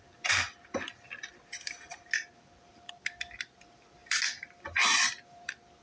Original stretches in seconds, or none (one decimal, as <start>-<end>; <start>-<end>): none